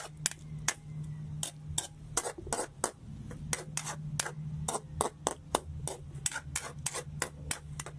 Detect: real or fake real